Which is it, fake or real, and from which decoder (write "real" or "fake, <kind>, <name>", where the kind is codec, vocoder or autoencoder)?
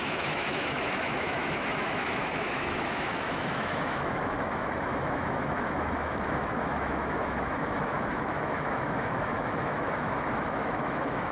fake, autoencoder, DAC-VAE